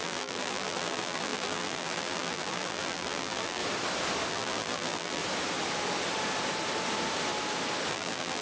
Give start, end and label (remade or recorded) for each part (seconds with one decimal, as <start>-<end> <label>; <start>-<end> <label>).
0.0-3.6 remade; 3.6-4.3 recorded; 4.3-5.2 remade; 5.2-7.9 recorded; 7.9-8.4 remade